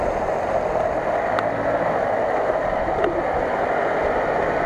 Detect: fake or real real